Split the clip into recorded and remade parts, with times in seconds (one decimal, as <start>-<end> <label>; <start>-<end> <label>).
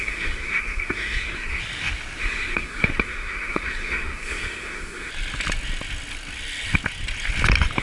0.0-1.6 remade; 1.6-2.2 recorded; 2.2-5.1 remade; 5.1-7.8 recorded